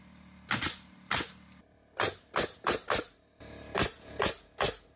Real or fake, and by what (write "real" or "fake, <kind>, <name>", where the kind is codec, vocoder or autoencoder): real